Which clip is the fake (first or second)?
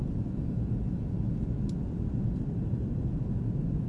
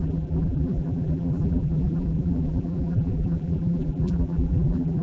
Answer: second